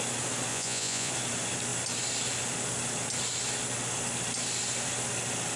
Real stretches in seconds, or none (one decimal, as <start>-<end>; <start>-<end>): 0.0-0.5; 1.1-5.6